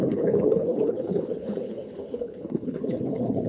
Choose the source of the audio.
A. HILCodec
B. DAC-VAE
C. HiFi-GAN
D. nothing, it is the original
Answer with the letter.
A